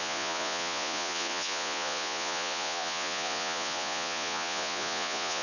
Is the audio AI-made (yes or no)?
yes